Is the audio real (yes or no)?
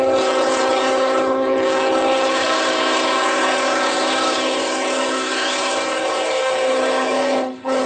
no